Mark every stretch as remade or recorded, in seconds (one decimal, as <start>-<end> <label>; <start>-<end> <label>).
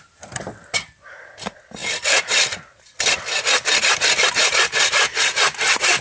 0.0-1.8 recorded; 1.8-5.4 remade; 5.4-6.0 recorded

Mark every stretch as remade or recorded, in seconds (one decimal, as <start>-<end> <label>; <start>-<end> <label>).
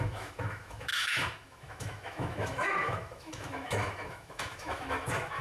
0.0-5.4 remade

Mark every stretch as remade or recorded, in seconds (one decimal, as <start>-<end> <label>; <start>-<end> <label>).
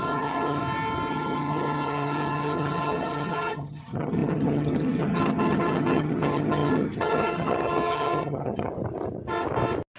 0.0-0.6 remade; 0.6-1.1 recorded; 1.1-8.7 remade; 8.7-10.0 recorded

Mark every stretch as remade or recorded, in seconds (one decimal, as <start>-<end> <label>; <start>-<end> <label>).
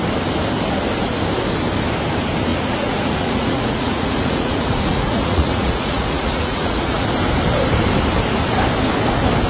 0.0-2.5 recorded; 2.5-7.1 remade; 7.1-9.5 recorded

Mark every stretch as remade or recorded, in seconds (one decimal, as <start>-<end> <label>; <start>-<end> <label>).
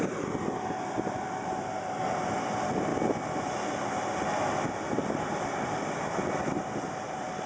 0.0-2.9 remade; 2.9-4.7 recorded; 4.7-7.5 remade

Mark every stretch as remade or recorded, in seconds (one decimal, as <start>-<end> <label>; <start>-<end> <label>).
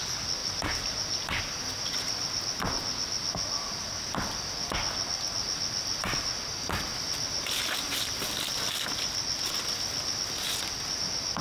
0.0-0.4 recorded; 0.4-1.4 remade; 1.4-11.4 recorded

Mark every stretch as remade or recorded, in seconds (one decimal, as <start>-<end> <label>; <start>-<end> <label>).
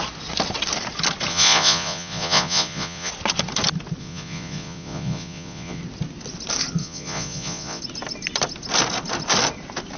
0.0-1.3 recorded; 1.3-3.1 remade; 3.1-4.0 recorded; 4.0-5.8 remade; 5.8-6.8 recorded; 6.8-7.8 remade; 7.8-10.0 recorded